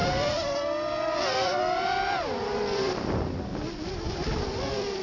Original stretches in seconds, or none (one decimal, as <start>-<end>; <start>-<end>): 3.5-4.1